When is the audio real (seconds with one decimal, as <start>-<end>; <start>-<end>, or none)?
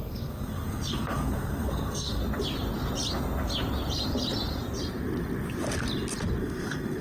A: 2.2-6.4